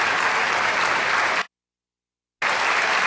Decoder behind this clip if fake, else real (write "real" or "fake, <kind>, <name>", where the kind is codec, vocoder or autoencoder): real